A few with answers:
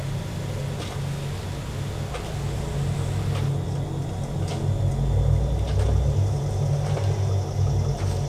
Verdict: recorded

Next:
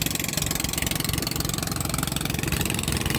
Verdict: recorded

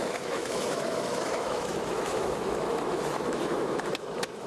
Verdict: remade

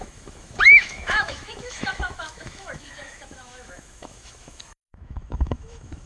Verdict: remade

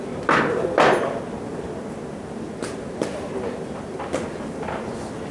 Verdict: recorded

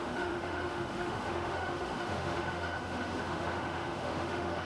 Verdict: remade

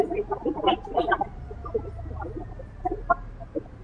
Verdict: recorded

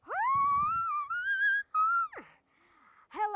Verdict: recorded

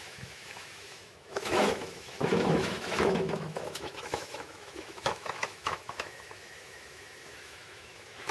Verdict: remade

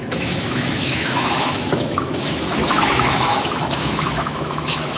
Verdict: remade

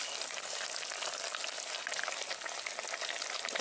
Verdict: recorded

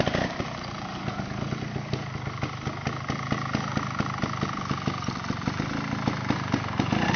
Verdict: recorded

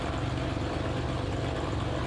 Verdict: recorded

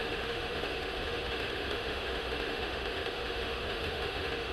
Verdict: remade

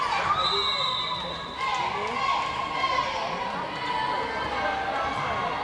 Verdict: recorded